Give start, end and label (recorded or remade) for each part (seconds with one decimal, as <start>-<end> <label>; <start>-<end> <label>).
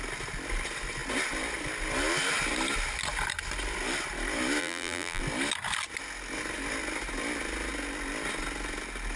0.0-4.6 recorded; 4.6-5.2 remade; 5.2-9.2 recorded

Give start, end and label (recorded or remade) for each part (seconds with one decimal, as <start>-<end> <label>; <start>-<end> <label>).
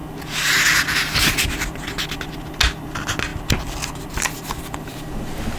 0.0-5.6 recorded